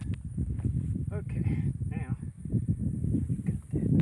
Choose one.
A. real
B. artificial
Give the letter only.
B